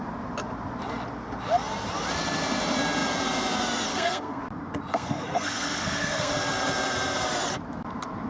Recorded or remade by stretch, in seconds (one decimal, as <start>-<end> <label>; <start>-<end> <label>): 0.0-3.9 recorded; 3.9-4.4 remade; 4.4-4.9 recorded; 4.9-6.3 remade; 6.3-8.3 recorded